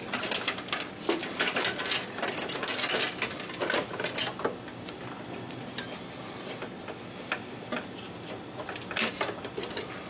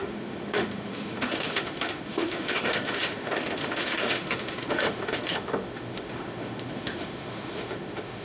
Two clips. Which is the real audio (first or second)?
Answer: first